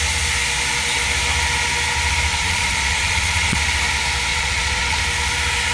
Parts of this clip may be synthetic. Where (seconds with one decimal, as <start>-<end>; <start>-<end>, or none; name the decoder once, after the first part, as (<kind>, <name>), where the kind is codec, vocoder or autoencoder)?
2.3-3.6 (vocoder, Vocos); 4.3-5.0